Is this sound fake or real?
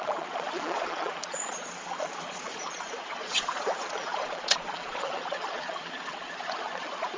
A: fake